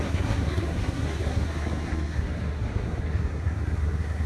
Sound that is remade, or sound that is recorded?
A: remade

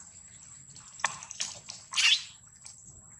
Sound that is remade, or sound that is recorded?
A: recorded